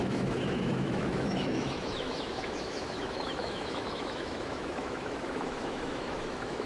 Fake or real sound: fake